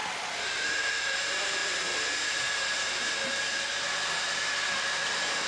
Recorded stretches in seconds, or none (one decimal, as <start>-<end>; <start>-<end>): 1.0-5.5